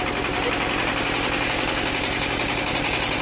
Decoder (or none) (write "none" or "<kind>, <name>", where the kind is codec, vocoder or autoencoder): none